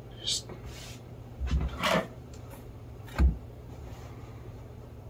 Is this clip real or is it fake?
fake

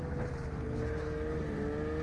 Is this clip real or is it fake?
real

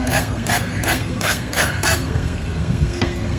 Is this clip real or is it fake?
fake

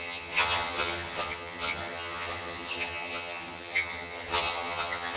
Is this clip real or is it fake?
fake